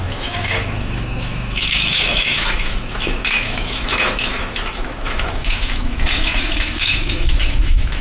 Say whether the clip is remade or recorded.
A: remade